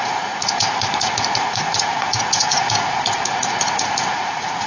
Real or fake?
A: fake